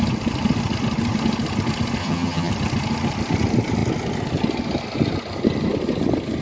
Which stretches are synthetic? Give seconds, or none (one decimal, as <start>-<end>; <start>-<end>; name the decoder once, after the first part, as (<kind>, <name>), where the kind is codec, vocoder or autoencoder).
2.0-2.5 (vocoder, HiFi-GAN)